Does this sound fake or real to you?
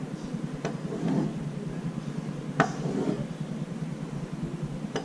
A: real